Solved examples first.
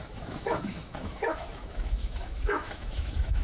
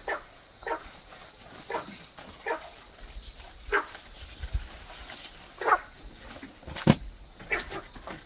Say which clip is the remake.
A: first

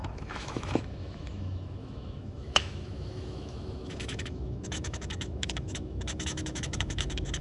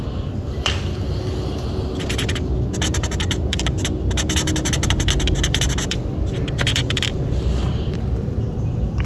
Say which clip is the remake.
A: first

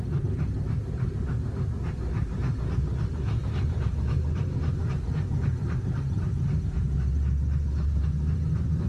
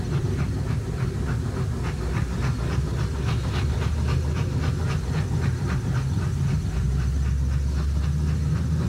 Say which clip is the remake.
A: first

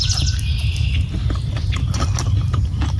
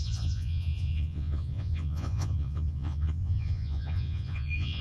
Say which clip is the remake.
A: second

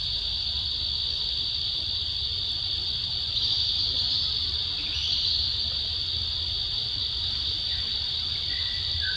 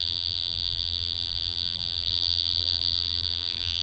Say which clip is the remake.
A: second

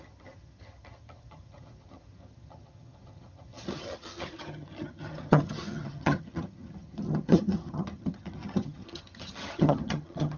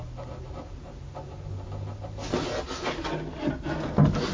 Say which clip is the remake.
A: first